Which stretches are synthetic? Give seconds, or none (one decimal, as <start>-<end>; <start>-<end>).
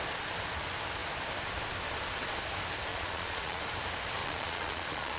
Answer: 2.9-3.6; 4.2-5.2